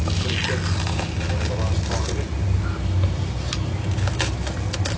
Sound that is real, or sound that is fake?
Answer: real